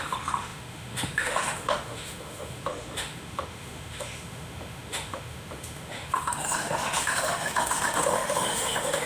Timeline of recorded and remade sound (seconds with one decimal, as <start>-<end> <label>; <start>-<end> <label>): 0.0-9.1 remade